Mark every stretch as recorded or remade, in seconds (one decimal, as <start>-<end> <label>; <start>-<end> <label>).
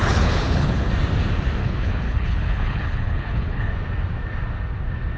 0.0-0.9 remade; 0.9-1.6 recorded; 1.6-3.7 remade; 3.7-5.2 recorded